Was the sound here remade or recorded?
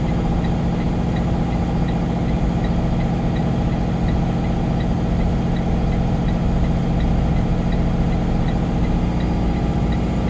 recorded